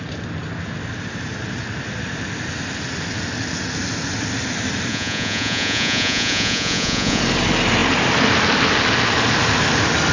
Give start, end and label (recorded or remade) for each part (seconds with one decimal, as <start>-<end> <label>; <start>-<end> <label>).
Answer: 0.0-4.9 recorded; 4.9-7.2 remade; 7.2-10.1 recorded